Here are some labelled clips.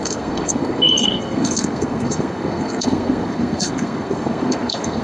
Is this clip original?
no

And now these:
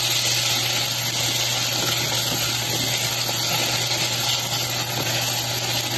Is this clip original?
yes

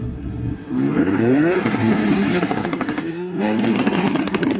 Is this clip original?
no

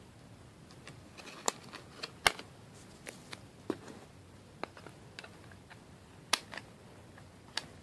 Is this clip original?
yes